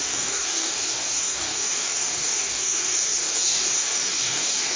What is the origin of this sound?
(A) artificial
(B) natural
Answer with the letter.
A